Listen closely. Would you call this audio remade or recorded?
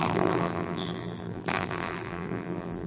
remade